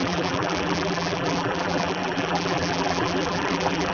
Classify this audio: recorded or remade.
remade